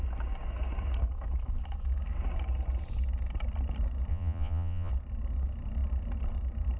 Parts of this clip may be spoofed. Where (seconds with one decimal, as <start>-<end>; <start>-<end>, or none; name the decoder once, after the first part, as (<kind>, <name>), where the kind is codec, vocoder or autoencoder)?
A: 4.1-4.9 (vocoder, Vocos)